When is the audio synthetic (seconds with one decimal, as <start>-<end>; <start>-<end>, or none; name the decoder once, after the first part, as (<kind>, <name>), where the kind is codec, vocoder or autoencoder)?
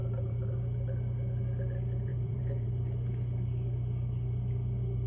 0.0-0.6 (vocoder, BigVGAN v2); 2.1-2.7